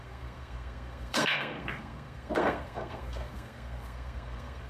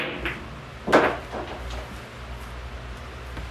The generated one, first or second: first